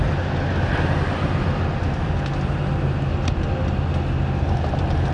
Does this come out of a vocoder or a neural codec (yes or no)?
no